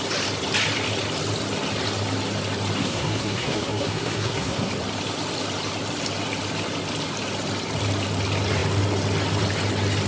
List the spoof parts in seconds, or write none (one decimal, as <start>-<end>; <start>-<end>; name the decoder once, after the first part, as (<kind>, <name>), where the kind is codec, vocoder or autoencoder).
2.8-4.7 (codec, SNAC)